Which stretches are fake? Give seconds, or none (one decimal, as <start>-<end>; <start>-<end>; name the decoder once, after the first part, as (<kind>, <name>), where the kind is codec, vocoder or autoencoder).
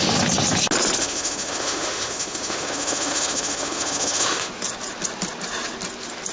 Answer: 1.0-4.5 (autoencoder, DAC-VAE)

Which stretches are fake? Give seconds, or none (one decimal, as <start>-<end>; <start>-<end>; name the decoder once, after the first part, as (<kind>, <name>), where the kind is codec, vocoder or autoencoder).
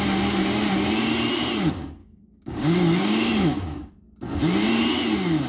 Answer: 2.0-3.8 (codec, DAC)